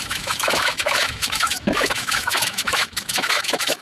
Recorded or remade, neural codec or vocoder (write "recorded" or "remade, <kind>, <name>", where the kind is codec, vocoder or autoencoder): remade, autoencoder, DAC-VAE